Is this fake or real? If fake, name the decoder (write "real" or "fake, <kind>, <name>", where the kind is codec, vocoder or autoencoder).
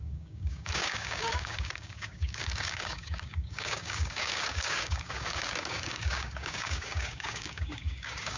fake, codec, DAC